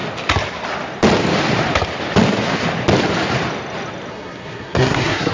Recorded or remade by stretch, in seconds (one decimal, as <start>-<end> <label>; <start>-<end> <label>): 0.0-4.1 recorded; 4.1-5.3 remade